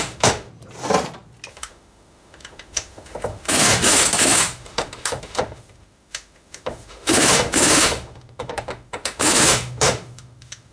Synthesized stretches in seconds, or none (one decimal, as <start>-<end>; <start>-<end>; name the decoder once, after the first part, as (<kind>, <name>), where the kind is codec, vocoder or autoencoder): 0.0-0.5 (autoencoder, DAC-VAE); 1.5-10.7